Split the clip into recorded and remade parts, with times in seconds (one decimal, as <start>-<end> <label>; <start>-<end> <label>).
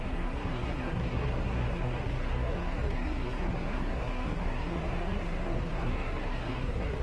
0.0-7.0 remade